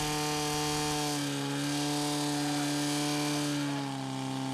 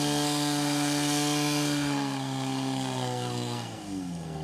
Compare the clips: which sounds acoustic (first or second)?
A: first